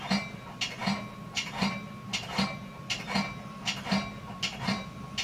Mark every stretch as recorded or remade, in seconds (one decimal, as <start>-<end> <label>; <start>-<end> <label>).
0.0-5.2 recorded